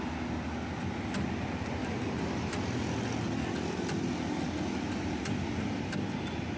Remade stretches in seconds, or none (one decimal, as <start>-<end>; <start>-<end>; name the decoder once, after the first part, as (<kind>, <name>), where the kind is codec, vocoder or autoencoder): none